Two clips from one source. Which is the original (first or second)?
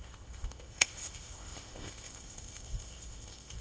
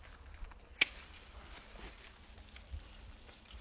second